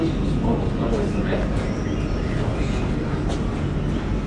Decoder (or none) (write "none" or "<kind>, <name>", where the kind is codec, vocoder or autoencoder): none